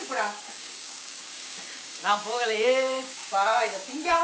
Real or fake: fake